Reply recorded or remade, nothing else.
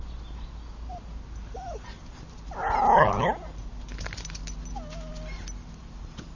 recorded